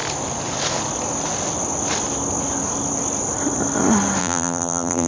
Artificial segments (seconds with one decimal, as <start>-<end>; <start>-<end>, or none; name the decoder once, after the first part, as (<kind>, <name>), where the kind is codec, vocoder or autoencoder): 4.2-5.1 (vocoder, BigVGAN v2)